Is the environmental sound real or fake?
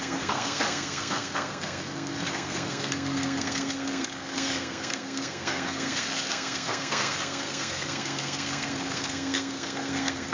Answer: fake